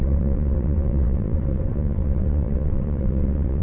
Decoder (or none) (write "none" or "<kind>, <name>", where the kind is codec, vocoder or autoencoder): vocoder, WaveNeXt